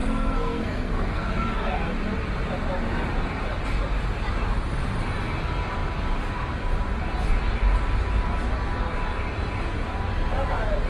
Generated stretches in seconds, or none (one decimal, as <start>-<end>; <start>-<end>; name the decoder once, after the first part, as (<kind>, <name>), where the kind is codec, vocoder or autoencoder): 0.0-1.9 (codec, SNAC)

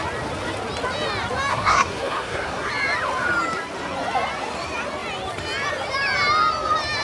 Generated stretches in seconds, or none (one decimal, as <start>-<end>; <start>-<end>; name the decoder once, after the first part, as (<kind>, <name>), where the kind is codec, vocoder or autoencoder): 1.5-2.7 (codec, SNAC)

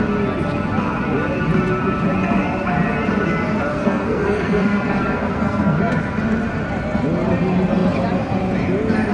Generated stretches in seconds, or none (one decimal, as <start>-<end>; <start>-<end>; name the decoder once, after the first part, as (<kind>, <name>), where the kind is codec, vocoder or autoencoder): 3.7-5.8 (codec, SNAC)

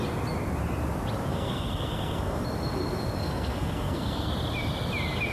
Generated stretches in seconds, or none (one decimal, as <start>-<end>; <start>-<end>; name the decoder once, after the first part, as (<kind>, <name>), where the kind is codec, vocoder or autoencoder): 1.3-2.4 (codec, SNAC); 3.2-4.3

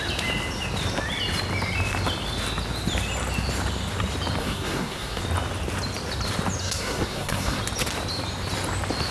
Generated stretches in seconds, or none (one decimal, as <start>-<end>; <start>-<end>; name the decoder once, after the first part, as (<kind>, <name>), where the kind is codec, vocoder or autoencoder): 4.4-5.2 (codec, SNAC); 6.6-7.6